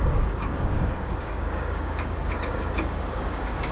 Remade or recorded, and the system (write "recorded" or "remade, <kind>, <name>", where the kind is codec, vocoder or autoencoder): remade, codec, DAC